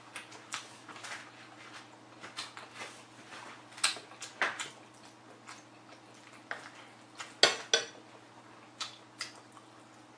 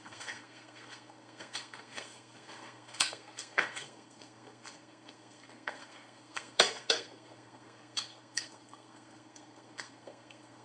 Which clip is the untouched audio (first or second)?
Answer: first